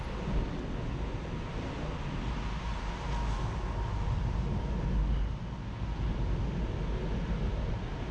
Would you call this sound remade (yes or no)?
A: no